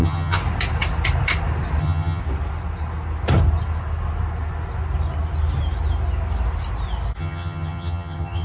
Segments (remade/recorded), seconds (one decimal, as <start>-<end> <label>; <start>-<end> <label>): 0.0-0.4 remade; 0.4-1.8 recorded; 1.8-2.2 remade; 2.2-7.2 recorded; 7.2-8.4 remade